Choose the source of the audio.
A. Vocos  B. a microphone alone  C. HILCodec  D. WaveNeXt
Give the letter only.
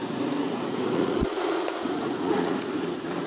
A